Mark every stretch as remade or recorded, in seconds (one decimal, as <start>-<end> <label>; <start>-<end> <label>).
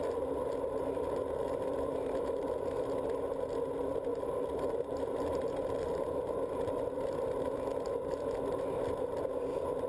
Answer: 0.0-4.1 recorded; 4.1-5.7 remade; 5.7-9.9 recorded